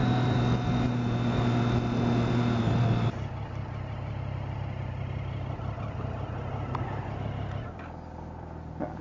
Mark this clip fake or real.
real